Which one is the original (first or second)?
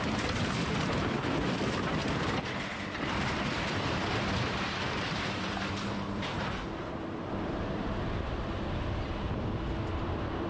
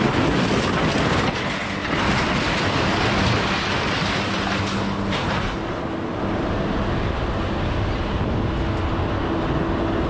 second